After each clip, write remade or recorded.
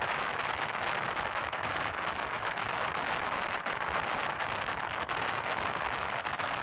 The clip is remade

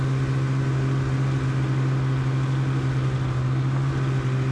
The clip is recorded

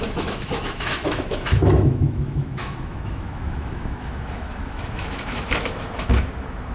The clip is remade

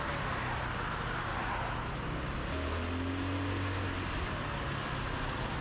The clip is recorded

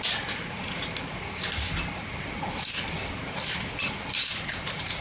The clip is recorded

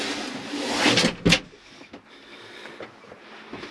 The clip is recorded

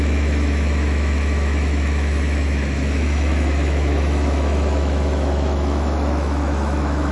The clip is remade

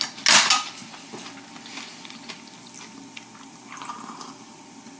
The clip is recorded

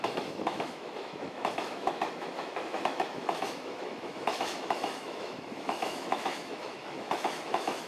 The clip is remade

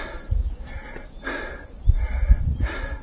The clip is recorded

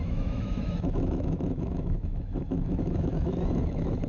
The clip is remade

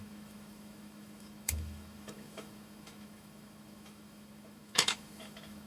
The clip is remade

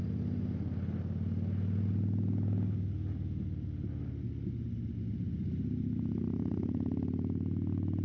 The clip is recorded